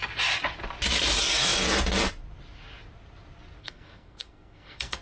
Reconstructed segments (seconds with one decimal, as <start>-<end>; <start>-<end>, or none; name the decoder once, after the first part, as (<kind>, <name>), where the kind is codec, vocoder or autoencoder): 3.6-5.0 (codec, SNAC)